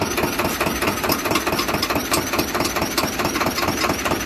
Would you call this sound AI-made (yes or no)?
yes